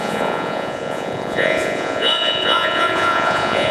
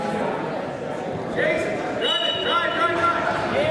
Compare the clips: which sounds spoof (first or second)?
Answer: first